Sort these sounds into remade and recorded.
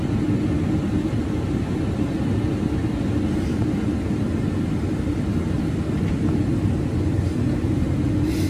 recorded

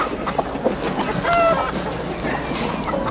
recorded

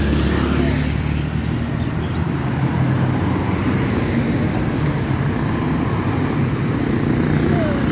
recorded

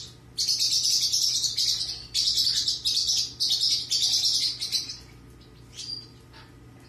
recorded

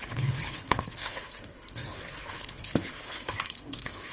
remade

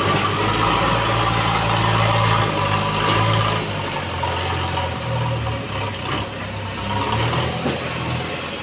recorded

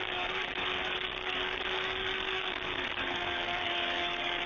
remade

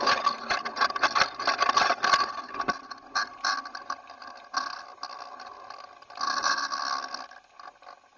recorded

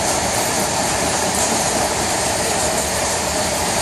remade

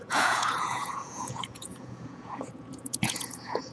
remade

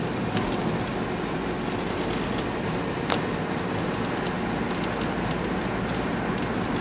recorded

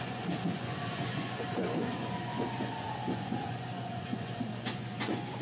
remade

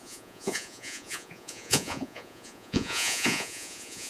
remade